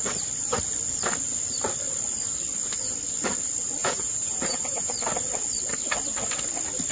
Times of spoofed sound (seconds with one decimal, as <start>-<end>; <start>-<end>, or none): 3.8-4.9